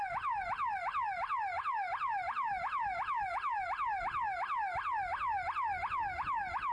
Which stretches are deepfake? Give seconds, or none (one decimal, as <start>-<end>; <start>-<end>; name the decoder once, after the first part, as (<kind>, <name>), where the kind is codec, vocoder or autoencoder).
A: none